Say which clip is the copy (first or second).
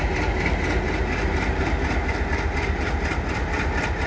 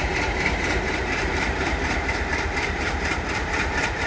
second